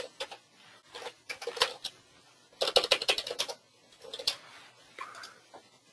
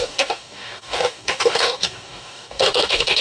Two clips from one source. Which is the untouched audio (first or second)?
first